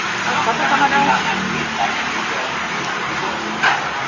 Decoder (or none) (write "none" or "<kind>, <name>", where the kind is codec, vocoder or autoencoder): none